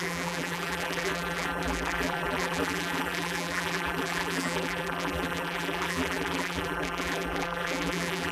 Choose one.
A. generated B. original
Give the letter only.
A